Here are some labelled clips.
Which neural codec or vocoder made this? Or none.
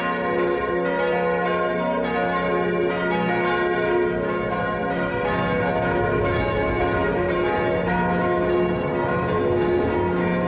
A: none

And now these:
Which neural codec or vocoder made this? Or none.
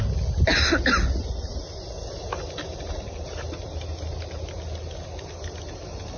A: none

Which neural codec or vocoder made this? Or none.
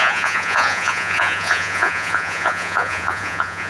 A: vocoder, Vocos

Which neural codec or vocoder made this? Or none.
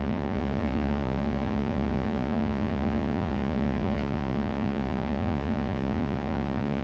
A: vocoder, Vocos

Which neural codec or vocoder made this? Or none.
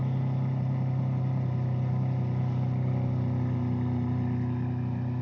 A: none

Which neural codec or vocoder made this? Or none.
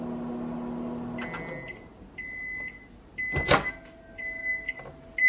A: none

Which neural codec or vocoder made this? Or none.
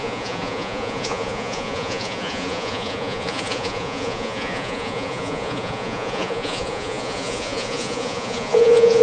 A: vocoder, Vocos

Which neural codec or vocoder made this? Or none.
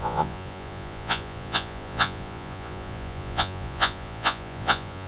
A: vocoder, Vocos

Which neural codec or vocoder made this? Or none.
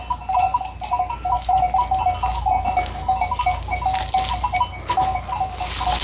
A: none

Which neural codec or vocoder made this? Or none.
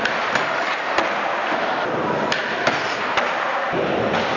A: none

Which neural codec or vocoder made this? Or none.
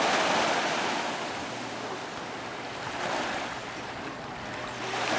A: none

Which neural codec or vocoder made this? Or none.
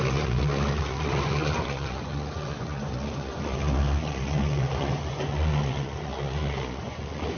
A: vocoder, Vocos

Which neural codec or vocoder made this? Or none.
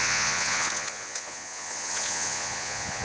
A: vocoder, Vocos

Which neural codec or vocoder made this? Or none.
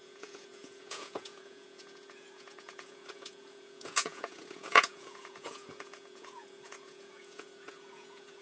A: vocoder, Vocos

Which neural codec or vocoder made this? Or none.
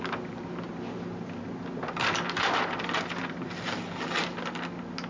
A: none